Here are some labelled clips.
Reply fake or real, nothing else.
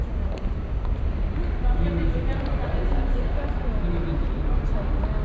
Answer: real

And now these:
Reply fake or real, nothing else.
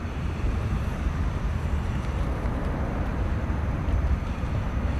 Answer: fake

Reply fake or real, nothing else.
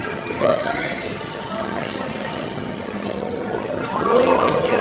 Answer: fake